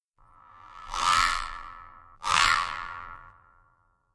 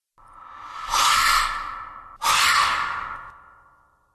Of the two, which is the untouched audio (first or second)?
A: second